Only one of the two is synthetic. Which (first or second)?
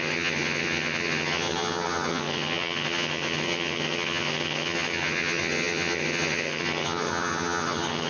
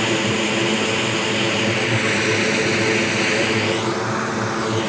first